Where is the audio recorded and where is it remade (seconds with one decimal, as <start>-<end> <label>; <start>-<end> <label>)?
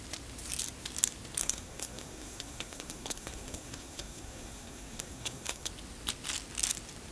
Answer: 0.0-1.4 recorded; 1.4-5.7 remade; 5.7-7.1 recorded